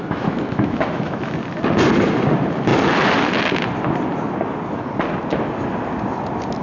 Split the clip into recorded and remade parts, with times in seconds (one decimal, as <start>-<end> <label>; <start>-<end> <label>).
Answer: 0.0-1.3 remade; 1.3-6.6 recorded